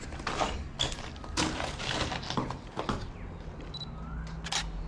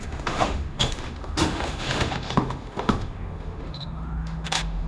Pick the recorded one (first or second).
first